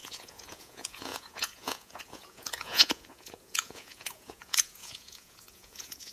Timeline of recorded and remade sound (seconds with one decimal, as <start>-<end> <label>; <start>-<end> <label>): 0.0-6.1 remade